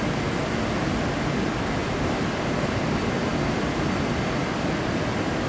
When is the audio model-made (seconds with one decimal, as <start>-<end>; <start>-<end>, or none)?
1.8-5.1

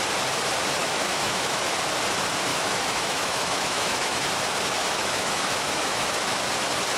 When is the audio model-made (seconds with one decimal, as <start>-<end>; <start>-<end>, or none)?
0.8-1.7; 2.5-4.3; 4.8-6.4

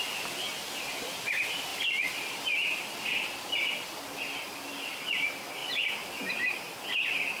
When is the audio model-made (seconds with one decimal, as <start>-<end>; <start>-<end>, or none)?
none

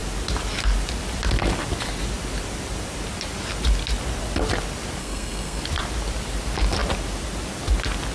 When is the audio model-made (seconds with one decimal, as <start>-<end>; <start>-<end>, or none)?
5.0-5.6

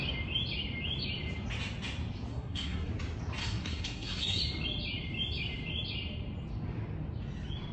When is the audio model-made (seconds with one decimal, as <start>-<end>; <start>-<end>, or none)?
2.3-2.9; 3.4-4.4

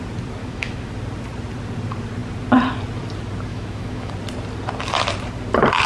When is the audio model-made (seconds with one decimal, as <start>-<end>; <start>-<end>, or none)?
0.4-0.9; 3.5-4.1